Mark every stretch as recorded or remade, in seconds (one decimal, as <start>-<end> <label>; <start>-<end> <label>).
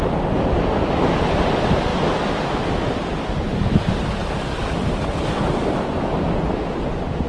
0.0-7.3 recorded